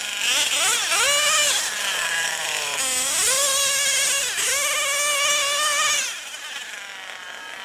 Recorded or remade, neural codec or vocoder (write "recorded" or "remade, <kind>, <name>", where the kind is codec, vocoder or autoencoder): recorded